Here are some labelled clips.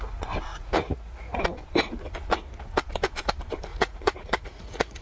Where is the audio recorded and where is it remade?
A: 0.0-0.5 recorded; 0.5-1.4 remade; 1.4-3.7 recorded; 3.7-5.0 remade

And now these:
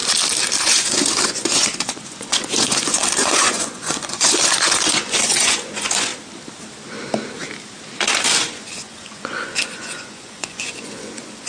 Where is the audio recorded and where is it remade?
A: 0.0-0.6 recorded; 0.6-6.1 remade; 6.1-8.4 recorded; 8.4-11.5 remade

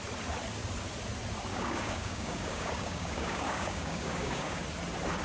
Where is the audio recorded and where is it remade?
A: 0.0-1.5 recorded; 1.5-4.6 remade; 4.6-5.2 recorded

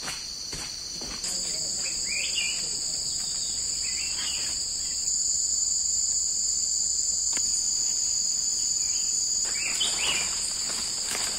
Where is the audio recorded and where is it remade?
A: 0.0-11.4 recorded